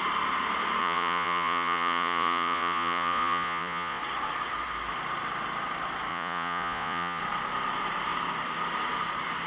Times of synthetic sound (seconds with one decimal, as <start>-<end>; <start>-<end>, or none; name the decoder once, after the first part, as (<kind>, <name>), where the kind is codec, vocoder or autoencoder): 0.8-4.0 (vocoder, Vocos); 6.1-7.2